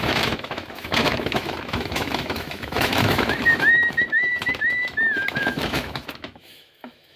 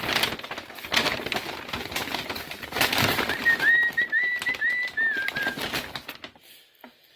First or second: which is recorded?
second